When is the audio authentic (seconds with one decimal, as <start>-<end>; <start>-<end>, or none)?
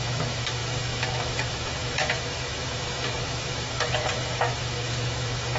none